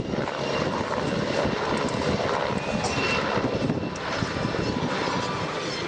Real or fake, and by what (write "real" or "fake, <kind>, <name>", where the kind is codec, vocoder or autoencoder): real